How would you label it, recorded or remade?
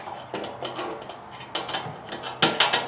recorded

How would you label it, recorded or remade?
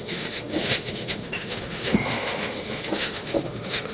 remade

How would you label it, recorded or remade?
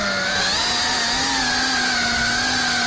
recorded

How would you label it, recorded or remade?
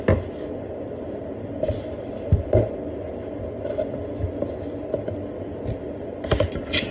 recorded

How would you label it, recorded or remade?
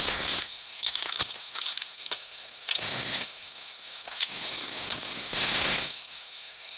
remade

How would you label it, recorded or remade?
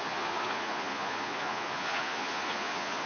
remade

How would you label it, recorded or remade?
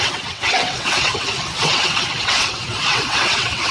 remade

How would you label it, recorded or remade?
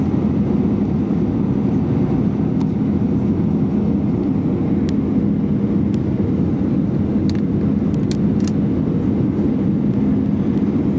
recorded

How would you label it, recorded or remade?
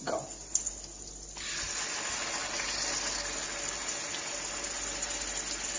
recorded